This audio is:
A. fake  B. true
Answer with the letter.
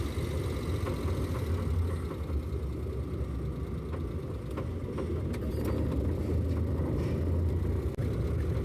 B